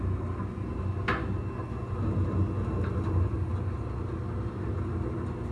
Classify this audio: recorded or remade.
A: recorded